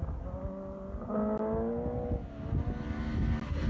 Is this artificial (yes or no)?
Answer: no